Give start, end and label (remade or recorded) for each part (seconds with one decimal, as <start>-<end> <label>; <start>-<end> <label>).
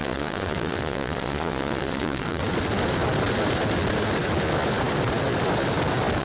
0.0-2.4 remade; 2.4-6.2 recorded